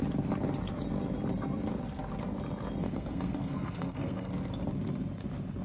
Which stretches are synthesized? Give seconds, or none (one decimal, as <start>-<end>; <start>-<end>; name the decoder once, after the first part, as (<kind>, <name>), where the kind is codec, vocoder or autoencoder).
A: 2.8-4.3 (codec, SNAC)